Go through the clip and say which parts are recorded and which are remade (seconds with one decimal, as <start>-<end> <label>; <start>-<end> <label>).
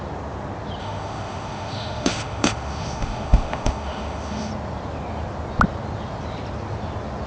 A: 0.0-0.8 recorded; 0.8-4.5 remade; 4.5-7.3 recorded